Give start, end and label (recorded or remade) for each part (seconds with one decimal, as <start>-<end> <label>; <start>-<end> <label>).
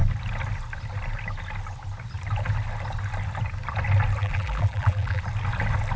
0.0-4.2 recorded; 4.2-5.2 remade; 5.2-6.0 recorded